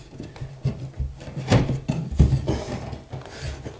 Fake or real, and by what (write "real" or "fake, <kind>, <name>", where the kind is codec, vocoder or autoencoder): real